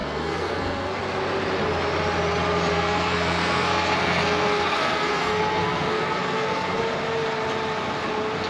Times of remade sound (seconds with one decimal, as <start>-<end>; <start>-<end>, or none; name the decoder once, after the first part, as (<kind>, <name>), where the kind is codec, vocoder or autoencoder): 0.0-1.0 (codec, SNAC); 2.7-6.8